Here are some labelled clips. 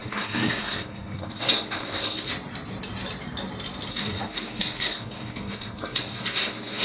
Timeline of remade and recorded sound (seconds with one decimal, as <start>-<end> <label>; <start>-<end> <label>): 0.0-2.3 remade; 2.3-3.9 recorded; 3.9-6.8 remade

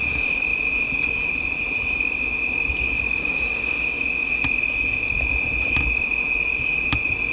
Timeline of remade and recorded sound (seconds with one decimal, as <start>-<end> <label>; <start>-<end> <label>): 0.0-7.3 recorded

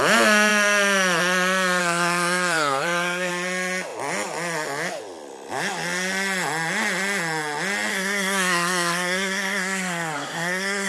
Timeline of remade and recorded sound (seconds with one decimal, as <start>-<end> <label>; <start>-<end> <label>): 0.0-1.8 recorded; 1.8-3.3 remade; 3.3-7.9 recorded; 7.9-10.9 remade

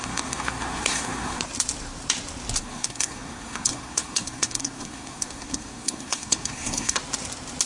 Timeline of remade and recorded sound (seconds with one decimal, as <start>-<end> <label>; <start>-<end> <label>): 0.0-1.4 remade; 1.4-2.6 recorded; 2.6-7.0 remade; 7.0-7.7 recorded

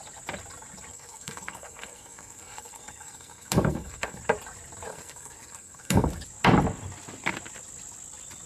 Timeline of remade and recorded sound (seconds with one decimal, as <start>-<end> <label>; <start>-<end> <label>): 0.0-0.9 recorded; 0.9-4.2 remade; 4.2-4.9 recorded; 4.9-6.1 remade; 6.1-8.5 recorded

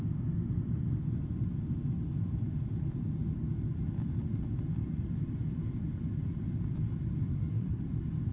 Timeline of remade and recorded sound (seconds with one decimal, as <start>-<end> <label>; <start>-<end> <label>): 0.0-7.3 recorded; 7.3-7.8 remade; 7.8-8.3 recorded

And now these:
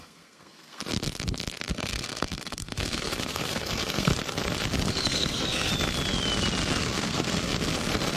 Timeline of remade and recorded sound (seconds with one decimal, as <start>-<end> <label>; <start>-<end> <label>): 0.0-0.8 remade; 0.8-1.7 recorded; 1.7-4.1 remade; 4.1-4.9 recorded; 4.9-5.7 remade; 5.7-6.8 recorded; 6.8-7.5 remade; 7.5-8.2 recorded